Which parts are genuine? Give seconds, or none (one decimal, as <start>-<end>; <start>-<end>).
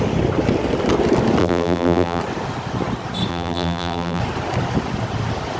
0.0-1.4; 2.2-3.3; 4.2-5.6